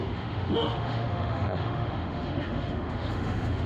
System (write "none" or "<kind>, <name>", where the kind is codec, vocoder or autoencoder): autoencoder, DAC-VAE